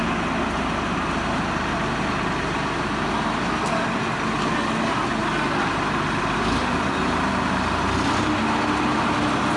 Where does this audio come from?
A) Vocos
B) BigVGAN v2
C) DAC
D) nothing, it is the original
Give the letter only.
D